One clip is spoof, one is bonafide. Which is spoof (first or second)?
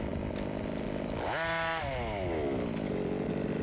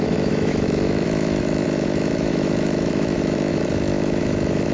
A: second